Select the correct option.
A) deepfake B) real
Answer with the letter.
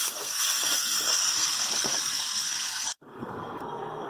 A